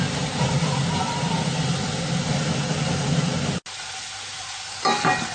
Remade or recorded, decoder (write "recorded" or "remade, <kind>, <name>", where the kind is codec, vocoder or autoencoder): recorded